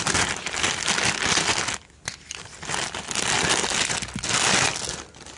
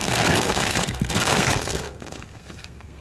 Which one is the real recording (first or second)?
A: first